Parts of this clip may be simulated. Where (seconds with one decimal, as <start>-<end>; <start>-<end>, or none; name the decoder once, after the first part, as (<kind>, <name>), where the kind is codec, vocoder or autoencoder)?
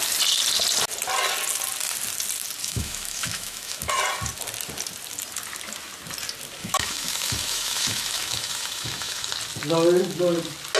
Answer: 2.6-3.9 (autoencoder, DAC-VAE); 6.6-9.3